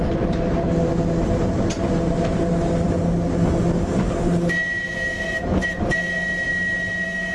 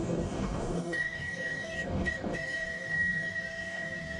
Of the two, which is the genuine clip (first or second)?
first